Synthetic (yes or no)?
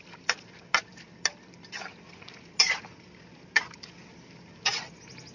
no